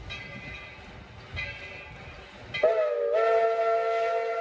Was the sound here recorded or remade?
recorded